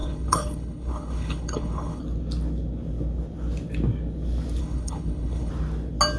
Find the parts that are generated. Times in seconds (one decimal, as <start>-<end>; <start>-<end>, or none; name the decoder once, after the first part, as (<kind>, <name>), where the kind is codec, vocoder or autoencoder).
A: 0.0-2.0 (codec, HILCodec); 4.6-5.5